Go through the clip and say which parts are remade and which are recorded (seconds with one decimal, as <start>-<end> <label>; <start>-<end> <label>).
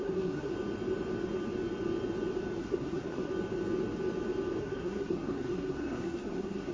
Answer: 0.0-0.5 remade; 0.5-2.6 recorded; 2.6-3.3 remade; 3.3-4.6 recorded; 4.6-6.7 remade